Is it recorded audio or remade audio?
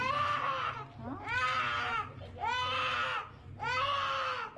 recorded